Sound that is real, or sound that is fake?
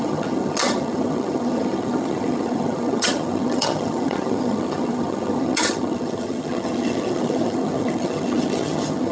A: fake